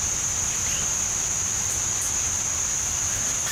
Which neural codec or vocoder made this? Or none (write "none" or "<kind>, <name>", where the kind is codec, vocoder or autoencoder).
none